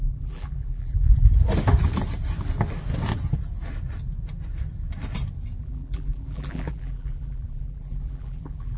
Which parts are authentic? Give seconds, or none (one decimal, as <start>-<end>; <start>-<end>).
1.3-5.6